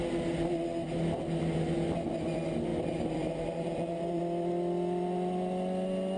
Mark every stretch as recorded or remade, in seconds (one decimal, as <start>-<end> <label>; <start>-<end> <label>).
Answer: 0.0-2.7 recorded; 2.7-4.2 remade; 4.2-6.2 recorded